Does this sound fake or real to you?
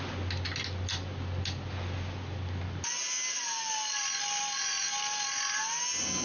real